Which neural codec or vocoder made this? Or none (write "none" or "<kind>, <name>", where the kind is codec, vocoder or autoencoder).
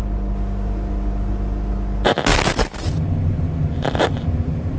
none